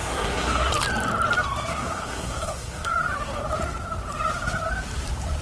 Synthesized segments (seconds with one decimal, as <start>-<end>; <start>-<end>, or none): 0.0-0.7; 1.7-2.9